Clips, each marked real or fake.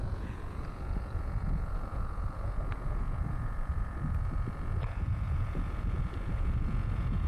fake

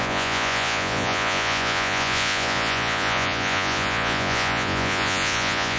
fake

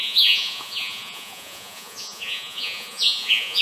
fake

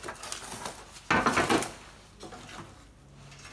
real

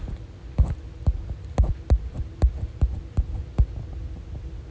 real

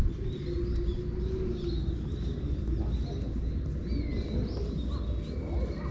real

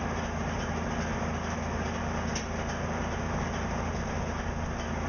real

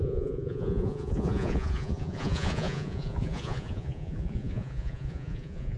fake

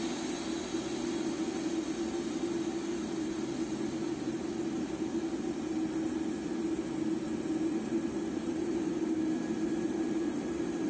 real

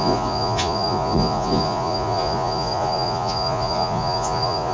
fake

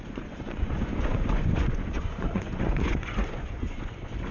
fake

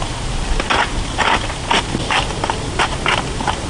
real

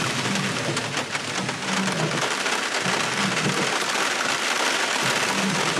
real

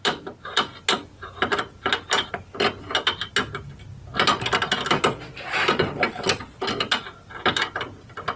real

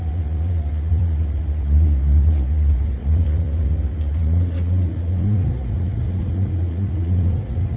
fake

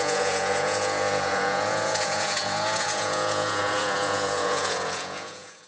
fake